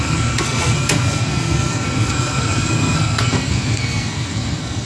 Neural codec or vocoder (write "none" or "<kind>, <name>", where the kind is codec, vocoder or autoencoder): codec, SNAC